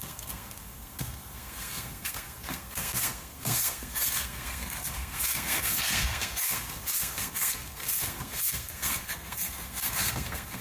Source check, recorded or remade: remade